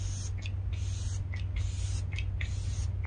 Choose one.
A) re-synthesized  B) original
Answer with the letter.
B